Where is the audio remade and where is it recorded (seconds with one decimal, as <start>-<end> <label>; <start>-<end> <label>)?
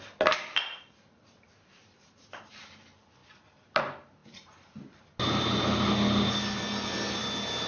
0.0-7.7 recorded